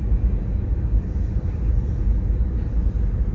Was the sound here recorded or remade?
recorded